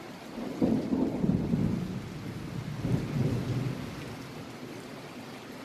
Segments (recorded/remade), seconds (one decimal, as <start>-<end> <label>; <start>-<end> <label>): 0.0-5.6 recorded